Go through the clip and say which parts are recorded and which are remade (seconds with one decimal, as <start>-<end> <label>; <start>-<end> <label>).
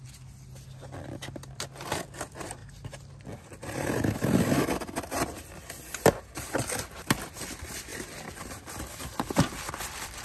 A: 0.0-10.2 recorded